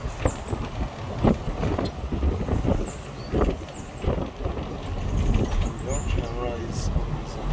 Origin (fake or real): real